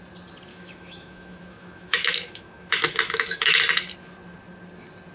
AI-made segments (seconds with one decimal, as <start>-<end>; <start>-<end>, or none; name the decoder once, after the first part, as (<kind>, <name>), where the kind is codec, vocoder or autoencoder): 0.5-3.6 (autoencoder, DAC-VAE)